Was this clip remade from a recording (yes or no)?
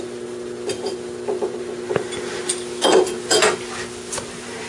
no